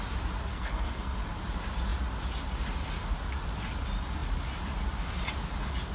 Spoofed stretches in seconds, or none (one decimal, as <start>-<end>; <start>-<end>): 0.5-1.2